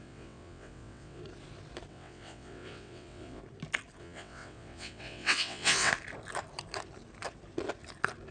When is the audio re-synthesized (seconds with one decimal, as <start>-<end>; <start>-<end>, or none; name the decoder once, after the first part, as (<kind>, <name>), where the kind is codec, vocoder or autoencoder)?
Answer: 0.0-1.2 (vocoder, WaveNeXt); 1.9-3.4; 4.0-5.9